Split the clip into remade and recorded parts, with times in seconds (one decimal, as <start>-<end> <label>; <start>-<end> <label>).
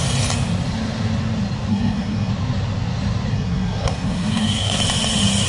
0.0-1.7 recorded; 1.7-2.3 remade; 2.3-3.3 recorded; 3.3-4.8 remade; 4.8-5.5 recorded